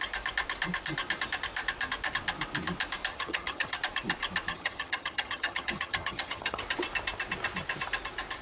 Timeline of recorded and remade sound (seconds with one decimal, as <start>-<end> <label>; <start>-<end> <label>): 0.0-3.1 recorded; 3.1-3.8 remade; 3.8-4.5 recorded; 4.5-6.6 remade; 6.6-8.4 recorded